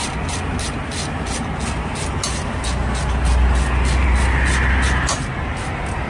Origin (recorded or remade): recorded